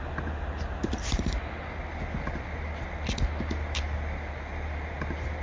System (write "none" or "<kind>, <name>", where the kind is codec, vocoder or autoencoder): none